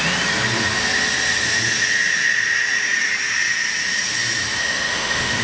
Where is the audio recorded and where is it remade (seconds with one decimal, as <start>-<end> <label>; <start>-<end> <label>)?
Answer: 0.0-4.6 recorded; 4.6-5.4 remade